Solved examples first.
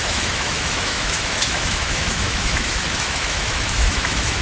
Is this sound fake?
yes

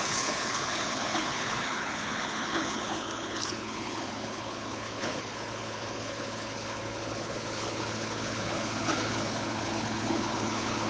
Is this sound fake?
yes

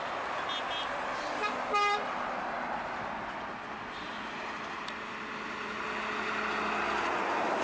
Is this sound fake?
no